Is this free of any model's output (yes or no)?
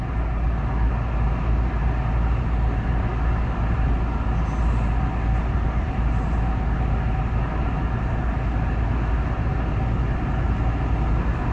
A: yes